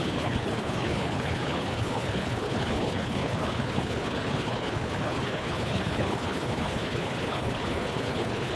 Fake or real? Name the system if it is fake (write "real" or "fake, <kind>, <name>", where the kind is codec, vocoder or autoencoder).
fake, codec, HILCodec